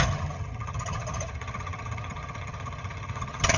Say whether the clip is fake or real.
fake